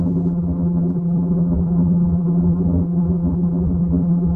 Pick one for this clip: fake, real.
fake